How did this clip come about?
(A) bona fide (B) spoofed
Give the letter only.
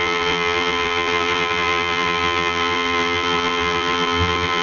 B